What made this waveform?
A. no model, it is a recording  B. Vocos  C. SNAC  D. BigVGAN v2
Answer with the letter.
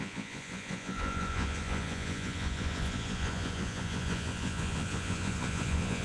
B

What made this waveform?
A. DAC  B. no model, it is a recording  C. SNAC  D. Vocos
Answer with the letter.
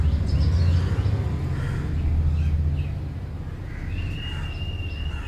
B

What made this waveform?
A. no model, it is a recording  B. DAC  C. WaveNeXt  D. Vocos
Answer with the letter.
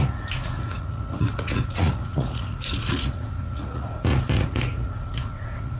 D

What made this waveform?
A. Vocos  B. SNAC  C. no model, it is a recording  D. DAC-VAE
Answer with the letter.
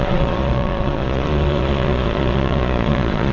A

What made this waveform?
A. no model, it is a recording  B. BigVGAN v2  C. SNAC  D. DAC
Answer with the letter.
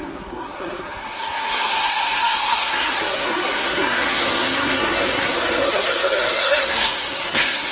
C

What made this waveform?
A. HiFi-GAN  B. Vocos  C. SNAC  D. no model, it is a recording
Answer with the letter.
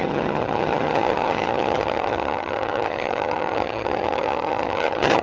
A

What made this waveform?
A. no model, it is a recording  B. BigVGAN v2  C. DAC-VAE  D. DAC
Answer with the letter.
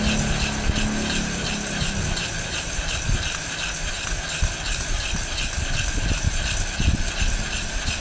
A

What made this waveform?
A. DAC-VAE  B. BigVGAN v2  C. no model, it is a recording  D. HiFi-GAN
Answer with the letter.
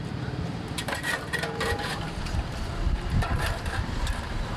B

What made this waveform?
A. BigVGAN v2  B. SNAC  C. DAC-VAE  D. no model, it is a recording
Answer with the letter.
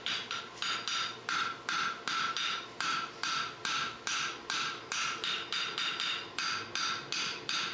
D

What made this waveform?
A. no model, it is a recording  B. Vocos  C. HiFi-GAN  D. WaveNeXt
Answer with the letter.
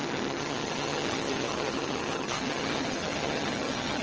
C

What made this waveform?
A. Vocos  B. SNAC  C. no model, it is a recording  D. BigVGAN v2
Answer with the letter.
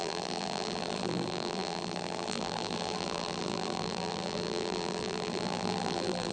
D